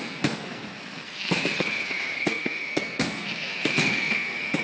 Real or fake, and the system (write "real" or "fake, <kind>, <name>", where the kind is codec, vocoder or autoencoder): fake, codec, SNAC